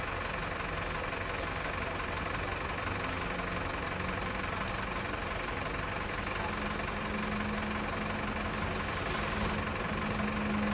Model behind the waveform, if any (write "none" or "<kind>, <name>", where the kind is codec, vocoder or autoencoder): none